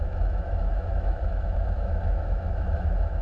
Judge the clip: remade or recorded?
remade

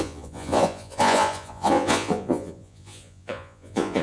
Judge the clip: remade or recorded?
remade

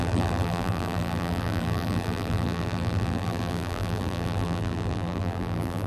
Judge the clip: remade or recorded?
remade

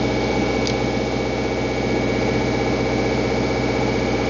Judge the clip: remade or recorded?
recorded